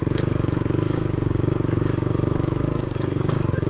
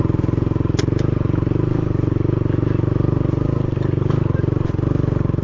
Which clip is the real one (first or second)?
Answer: second